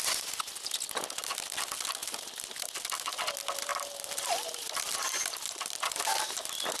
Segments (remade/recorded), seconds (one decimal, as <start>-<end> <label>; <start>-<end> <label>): 0.0-3.7 recorded; 3.7-6.8 remade